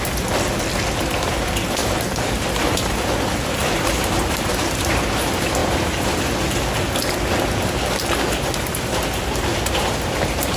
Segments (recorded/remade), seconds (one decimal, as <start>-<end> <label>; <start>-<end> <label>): 0.0-1.8 recorded; 1.8-2.3 remade; 2.3-3.6 recorded; 3.6-5.0 remade; 5.0-5.6 recorded; 5.6-6.2 remade; 6.2-9.5 recorded; 9.5-10.6 remade